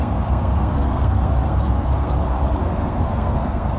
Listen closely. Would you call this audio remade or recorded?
remade